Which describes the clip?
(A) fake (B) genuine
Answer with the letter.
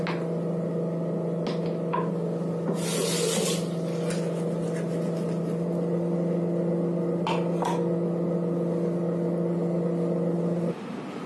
B